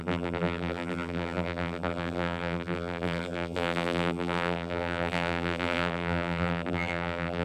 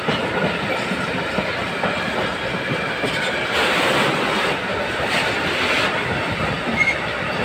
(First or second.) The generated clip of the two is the first